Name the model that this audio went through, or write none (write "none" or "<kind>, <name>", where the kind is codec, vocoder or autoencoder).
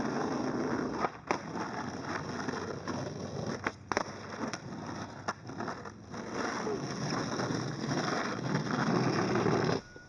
none